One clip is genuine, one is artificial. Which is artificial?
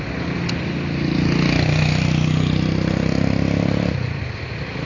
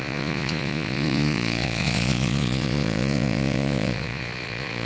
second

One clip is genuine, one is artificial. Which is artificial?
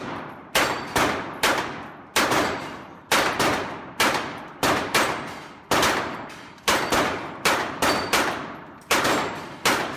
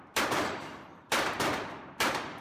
second